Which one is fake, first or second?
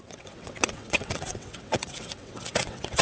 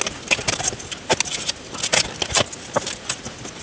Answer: first